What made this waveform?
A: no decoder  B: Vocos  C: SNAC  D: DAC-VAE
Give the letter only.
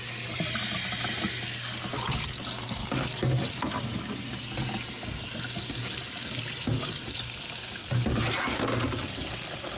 A